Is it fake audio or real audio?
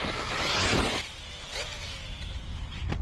real